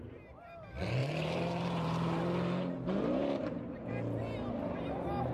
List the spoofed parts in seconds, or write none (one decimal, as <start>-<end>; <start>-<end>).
1.0-2.2; 3.2-3.9